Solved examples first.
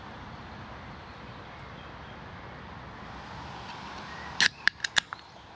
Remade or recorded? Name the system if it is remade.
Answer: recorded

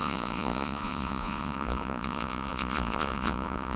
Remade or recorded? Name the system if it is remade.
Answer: remade, vocoder, Vocos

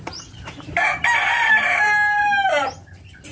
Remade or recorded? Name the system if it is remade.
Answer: remade, vocoder, BigVGAN v2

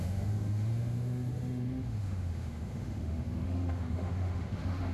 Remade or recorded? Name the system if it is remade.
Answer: remade, autoencoder, DAC-VAE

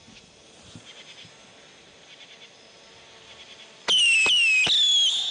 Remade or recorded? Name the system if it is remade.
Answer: recorded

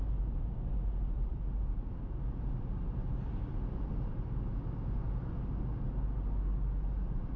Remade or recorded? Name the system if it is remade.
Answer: recorded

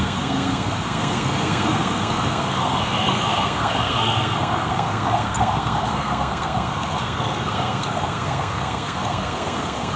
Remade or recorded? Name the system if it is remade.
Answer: remade, codec, SNAC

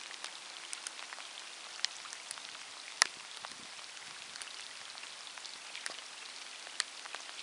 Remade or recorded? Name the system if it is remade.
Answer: recorded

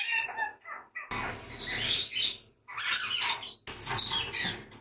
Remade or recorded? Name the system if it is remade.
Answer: recorded